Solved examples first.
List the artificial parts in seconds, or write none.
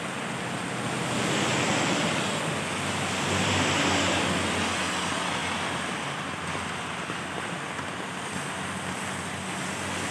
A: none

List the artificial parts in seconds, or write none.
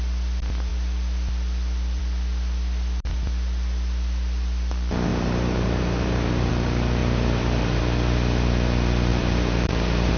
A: 5.1-6.5 (vocoder, BigVGAN v2); 7.0-7.8; 9.1-10.2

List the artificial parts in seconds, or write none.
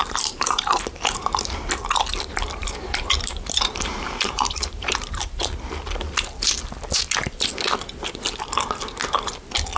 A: 0.0-0.8 (vocoder, BigVGAN v2); 2.6-5.4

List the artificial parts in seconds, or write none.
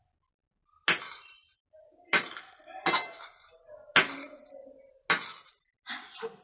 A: none